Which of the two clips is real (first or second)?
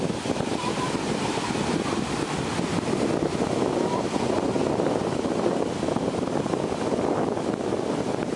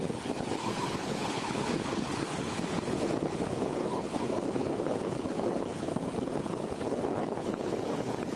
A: first